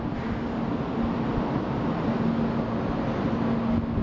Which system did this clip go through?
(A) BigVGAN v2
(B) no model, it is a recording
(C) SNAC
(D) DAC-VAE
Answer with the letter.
B